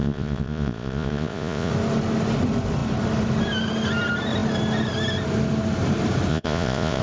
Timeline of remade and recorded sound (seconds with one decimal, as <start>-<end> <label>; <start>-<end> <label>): 0.0-1.7 remade; 1.7-6.3 recorded; 6.3-7.0 remade